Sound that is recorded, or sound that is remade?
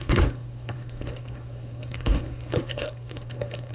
remade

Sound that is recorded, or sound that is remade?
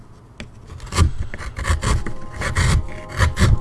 recorded